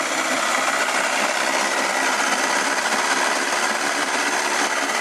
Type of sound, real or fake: real